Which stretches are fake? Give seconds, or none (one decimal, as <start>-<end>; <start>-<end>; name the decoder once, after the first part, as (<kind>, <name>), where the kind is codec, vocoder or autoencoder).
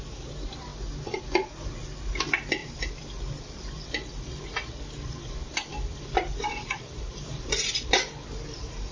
2.6-4.2 (vocoder, BigVGAN v2); 5.4-7.9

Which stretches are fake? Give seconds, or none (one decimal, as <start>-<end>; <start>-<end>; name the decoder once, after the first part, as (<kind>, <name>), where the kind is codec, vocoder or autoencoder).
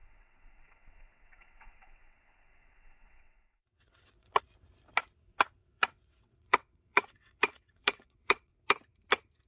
0.0-4.4 (vocoder, WaveNeXt); 5.6-8.5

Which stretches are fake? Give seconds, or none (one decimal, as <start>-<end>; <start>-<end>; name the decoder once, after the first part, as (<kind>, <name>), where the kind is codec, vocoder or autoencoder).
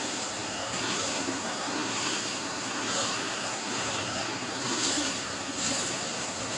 0.0-6.6 (codec, SNAC)